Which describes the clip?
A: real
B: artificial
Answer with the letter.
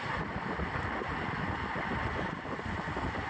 A